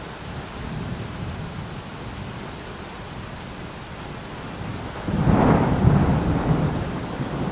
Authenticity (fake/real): real